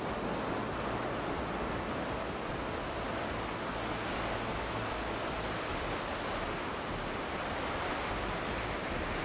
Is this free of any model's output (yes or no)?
yes